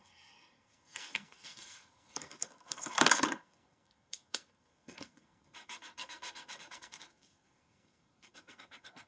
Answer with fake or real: fake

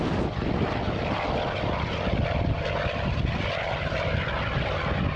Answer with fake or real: real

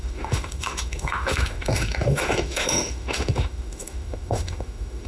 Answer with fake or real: fake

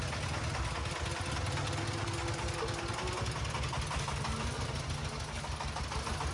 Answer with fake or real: real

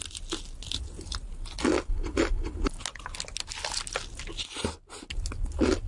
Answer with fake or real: real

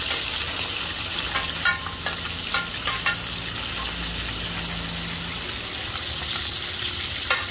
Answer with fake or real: real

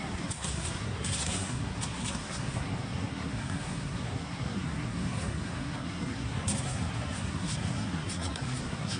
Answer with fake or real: fake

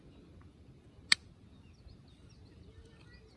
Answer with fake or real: real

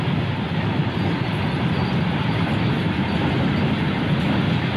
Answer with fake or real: real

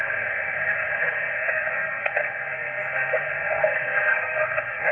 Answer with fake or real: fake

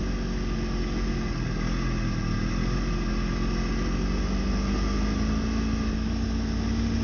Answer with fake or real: real